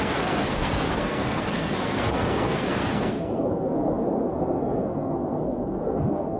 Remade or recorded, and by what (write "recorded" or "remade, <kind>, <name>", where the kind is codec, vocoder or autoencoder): remade, codec, SNAC